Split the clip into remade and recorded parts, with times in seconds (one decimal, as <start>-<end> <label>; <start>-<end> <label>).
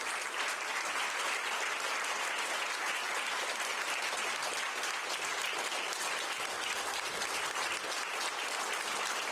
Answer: 0.0-9.3 recorded